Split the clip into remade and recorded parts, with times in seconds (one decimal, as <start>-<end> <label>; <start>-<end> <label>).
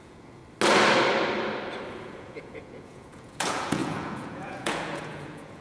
0.0-0.4 remade; 0.4-1.9 recorded; 1.9-5.6 remade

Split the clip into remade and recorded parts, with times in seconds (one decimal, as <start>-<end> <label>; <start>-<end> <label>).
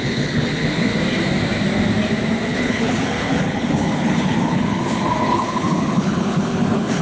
0.0-0.9 remade; 0.9-2.5 recorded; 2.5-7.0 remade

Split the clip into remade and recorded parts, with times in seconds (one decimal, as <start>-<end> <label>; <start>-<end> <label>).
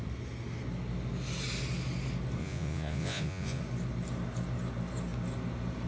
0.0-2.4 recorded; 2.4-3.6 remade; 3.6-5.9 recorded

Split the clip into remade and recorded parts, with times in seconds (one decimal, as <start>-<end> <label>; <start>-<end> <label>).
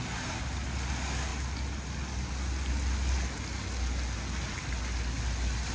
0.0-5.7 recorded